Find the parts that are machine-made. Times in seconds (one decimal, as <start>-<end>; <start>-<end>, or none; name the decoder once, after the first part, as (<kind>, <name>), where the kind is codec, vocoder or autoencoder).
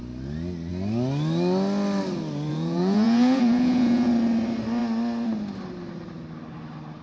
2.5-4.1 (vocoder, Vocos)